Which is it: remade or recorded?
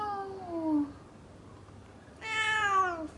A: recorded